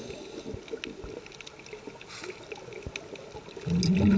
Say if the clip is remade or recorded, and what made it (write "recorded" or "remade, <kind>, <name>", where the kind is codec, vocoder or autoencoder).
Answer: recorded